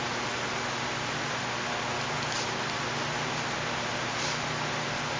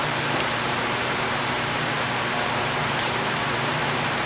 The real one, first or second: first